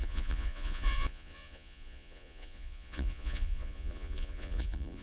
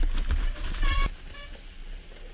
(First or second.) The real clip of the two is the second